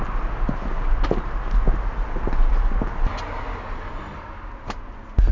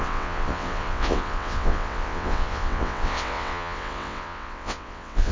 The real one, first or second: first